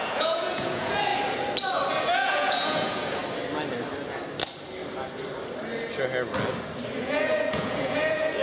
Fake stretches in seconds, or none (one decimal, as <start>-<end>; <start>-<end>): 0.0-1.1; 1.9-3.2; 7.0-8.4